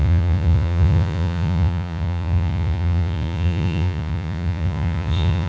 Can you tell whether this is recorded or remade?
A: remade